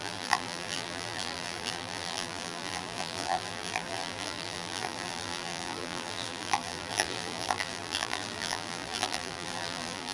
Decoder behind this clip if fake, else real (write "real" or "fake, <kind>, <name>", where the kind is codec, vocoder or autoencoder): fake, vocoder, BigVGAN v2